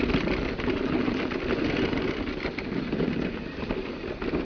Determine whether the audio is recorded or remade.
recorded